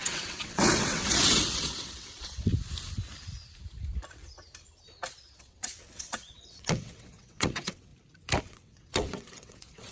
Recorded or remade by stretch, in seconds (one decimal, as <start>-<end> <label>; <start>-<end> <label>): 0.0-2.5 remade; 2.5-5.2 recorded; 5.2-7.9 remade; 7.9-8.4 recorded; 8.4-9.9 remade